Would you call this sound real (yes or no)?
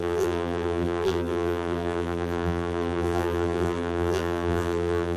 no